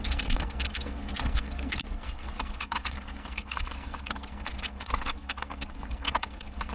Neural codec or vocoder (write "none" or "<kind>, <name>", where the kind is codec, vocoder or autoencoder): codec, SNAC